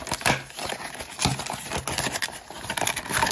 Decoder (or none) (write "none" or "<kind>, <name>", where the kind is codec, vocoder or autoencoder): none